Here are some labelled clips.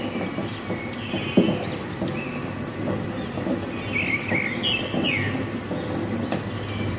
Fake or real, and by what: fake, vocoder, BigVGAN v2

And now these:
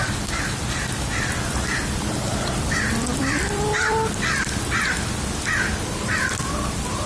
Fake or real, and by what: fake, vocoder, BigVGAN v2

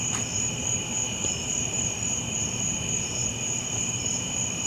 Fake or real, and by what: fake, vocoder, BigVGAN v2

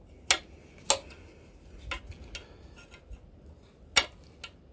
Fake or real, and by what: real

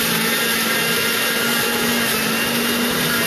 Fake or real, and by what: real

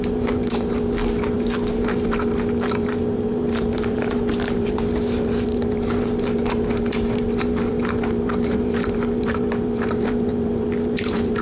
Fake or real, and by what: fake, vocoder, BigVGAN v2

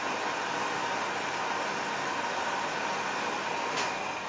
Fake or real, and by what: real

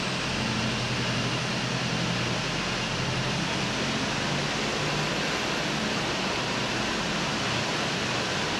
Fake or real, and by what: real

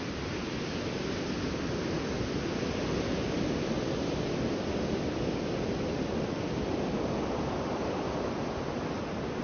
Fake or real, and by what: fake, vocoder, BigVGAN v2